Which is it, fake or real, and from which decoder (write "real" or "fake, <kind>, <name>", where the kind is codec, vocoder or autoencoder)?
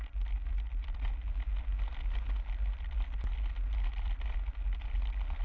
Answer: real